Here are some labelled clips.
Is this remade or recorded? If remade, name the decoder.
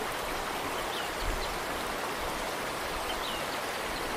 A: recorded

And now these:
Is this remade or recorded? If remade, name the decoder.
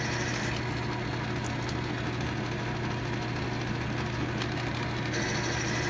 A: recorded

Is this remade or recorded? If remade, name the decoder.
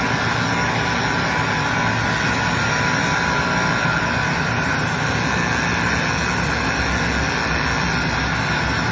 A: recorded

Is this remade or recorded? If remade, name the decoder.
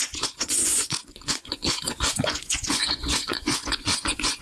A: remade, vocoder, Vocos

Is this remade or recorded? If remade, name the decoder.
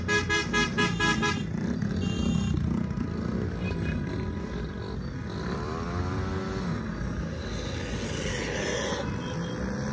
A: recorded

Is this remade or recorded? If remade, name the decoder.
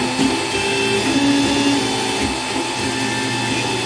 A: recorded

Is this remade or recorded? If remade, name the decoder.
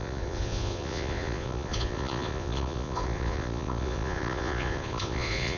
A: remade, vocoder, Vocos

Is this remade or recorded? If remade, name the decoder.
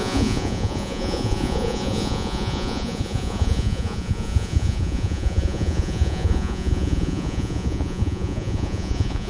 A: remade, vocoder, Vocos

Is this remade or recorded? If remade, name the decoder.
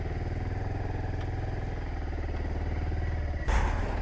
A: recorded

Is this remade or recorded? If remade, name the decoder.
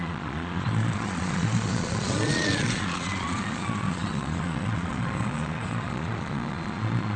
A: remade, vocoder, Vocos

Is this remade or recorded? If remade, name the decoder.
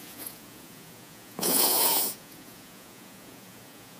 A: remade, vocoder, Vocos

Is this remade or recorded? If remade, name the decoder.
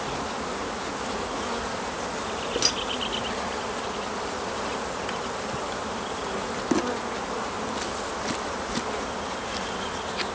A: recorded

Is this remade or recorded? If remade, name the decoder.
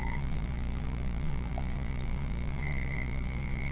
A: remade, vocoder, Vocos